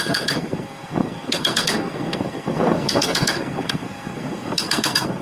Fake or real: fake